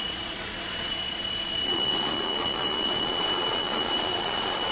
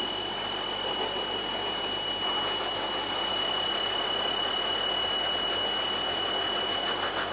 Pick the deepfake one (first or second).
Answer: first